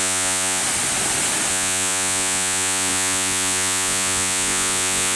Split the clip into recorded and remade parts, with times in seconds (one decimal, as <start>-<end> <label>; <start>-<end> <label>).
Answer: 0.0-0.6 remade; 0.6-1.5 recorded; 1.5-5.2 remade